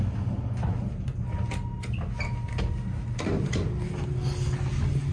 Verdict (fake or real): real